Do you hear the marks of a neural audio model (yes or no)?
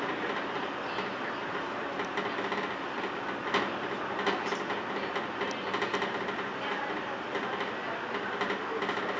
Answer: no